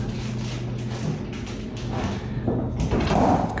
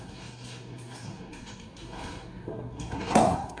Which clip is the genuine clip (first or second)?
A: first